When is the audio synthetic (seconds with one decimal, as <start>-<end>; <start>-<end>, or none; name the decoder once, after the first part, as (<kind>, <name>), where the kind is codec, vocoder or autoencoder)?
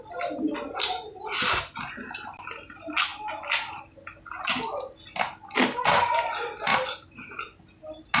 none